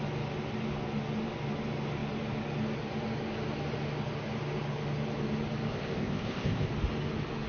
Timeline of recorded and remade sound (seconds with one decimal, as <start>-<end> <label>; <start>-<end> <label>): 0.0-5.7 recorded; 5.7-6.7 remade; 6.7-7.5 recorded